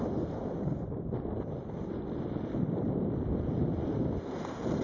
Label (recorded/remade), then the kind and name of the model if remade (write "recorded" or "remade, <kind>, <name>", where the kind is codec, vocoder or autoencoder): remade, vocoder, BigVGAN v2